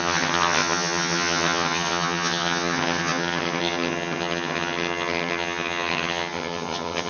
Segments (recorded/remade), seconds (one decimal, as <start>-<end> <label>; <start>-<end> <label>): 0.0-7.1 remade